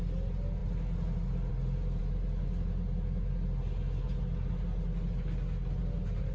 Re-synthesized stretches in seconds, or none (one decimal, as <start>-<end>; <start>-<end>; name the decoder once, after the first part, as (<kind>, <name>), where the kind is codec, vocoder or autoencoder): none